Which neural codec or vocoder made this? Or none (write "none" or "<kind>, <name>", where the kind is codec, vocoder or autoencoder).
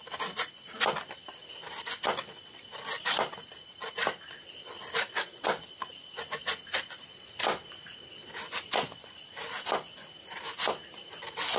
none